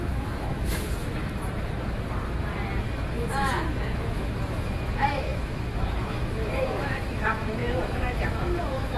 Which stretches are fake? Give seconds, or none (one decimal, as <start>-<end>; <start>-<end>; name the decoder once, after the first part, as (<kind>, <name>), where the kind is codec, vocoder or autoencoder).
0.0-1.4 (autoencoder, DAC-VAE); 2.8-9.0